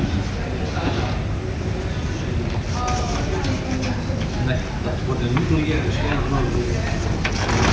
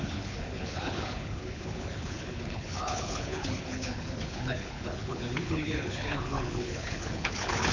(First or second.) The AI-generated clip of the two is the second